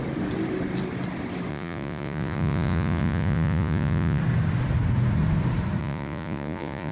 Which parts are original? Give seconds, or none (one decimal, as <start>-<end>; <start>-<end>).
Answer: 0.0-1.5; 4.2-5.8